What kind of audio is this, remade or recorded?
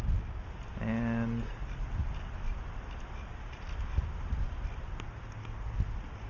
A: recorded